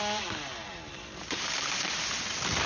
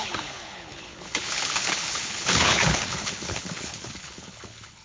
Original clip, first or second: first